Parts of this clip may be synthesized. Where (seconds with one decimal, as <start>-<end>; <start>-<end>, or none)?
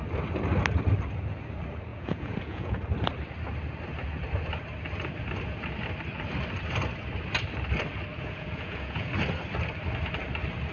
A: 1.9-2.8; 8.1-9.1